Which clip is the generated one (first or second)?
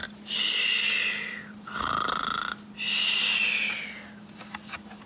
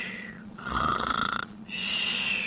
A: second